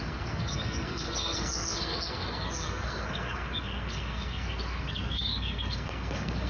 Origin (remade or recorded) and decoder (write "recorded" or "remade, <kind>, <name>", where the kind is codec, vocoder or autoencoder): remade, codec, SNAC